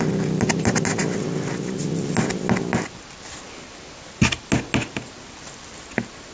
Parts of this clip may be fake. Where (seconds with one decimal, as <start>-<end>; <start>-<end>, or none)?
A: none